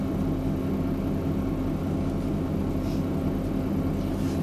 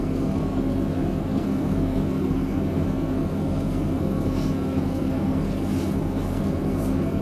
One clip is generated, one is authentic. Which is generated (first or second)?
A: second